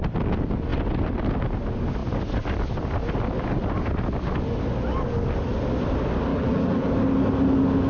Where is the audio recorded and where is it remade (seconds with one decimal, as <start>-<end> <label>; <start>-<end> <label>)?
0.0-6.3 recorded; 6.3-6.9 remade; 6.9-7.9 recorded